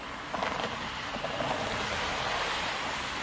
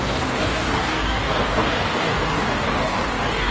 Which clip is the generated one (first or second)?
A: second